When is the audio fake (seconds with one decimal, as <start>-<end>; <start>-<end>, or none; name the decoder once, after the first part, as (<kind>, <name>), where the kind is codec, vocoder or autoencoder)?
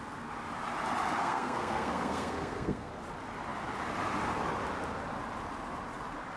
1.2-2.9 (codec, SNAC)